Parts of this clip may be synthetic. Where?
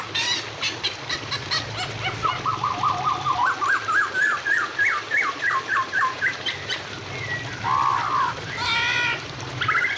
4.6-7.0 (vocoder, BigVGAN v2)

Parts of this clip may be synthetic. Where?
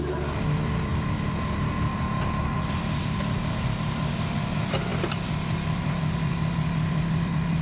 4.9-7.6 (vocoder, BigVGAN v2)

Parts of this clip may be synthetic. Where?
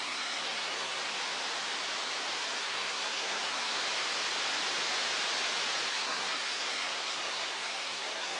0.0-1.0 (codec, SNAC); 2.6-3.8; 5.9-8.4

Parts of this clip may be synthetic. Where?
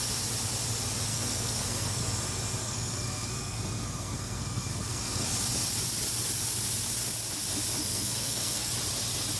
1.1-2.0 (codec, SNAC); 2.6-5.3; 7.8-8.7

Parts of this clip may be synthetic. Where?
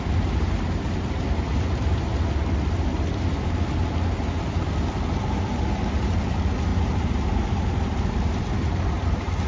none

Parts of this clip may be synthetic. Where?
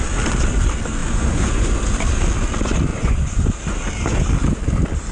1.0-1.8 (vocoder, Vocos); 2.9-3.6